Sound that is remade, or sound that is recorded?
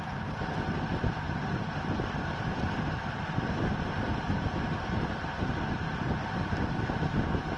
recorded